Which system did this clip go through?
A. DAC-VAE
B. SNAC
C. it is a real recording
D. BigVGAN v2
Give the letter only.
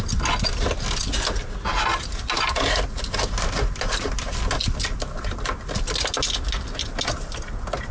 C